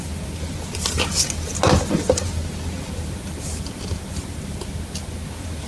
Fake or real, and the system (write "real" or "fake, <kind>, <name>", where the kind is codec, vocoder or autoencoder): real